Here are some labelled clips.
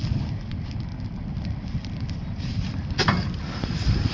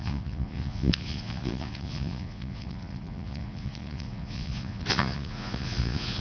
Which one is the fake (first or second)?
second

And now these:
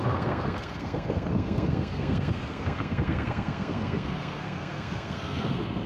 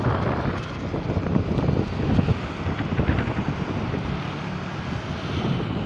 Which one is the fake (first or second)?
first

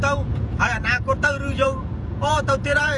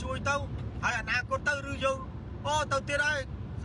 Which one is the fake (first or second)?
first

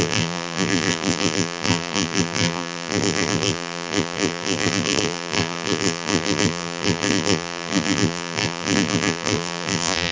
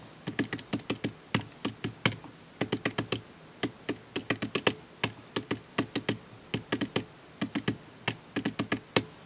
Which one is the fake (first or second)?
first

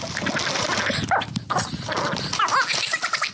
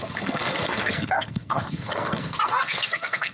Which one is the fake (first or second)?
second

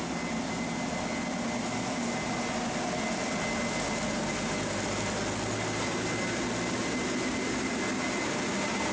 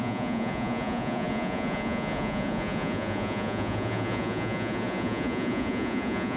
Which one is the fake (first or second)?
second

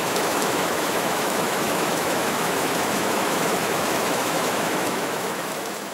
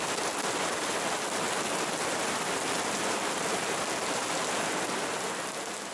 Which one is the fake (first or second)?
first